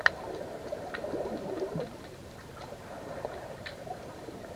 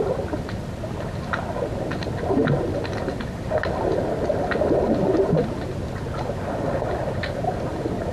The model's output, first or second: first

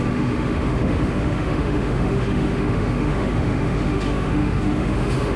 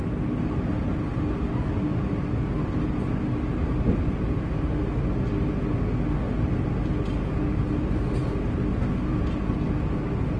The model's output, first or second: first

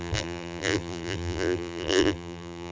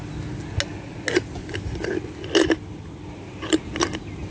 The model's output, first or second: first